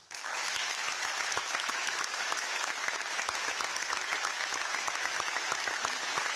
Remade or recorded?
remade